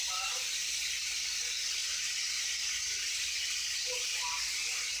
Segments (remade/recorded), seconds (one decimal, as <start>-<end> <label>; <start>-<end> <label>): 0.0-5.0 recorded